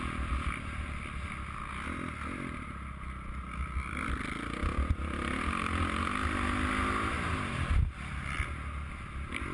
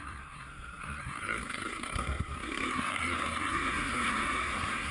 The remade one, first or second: second